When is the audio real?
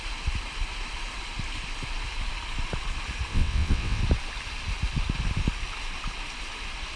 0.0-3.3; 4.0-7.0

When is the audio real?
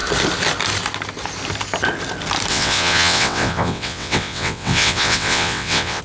0.0-2.5